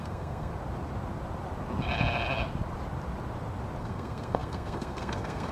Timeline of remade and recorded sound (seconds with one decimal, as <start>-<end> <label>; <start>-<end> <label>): 0.0-0.5 remade; 0.5-3.8 recorded; 3.8-5.5 remade